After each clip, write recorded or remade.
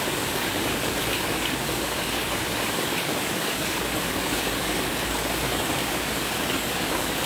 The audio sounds remade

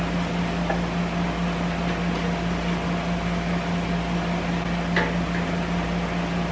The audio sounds recorded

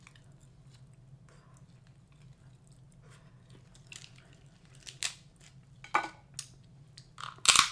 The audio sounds recorded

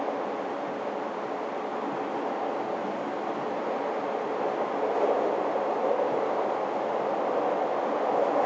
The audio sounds recorded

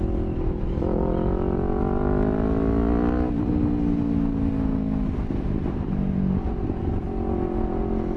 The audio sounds recorded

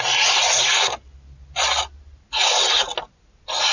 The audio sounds recorded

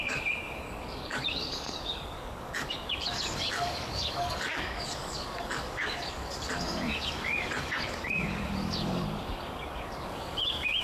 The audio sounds remade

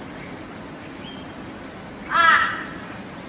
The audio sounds recorded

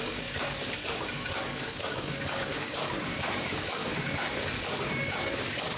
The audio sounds remade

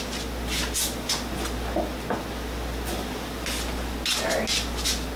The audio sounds recorded